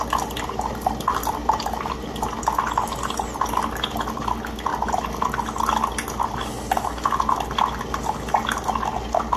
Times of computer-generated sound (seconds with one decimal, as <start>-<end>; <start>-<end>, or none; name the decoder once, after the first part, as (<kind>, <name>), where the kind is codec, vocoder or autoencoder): 1.4-2.4 (vocoder, BigVGAN v2)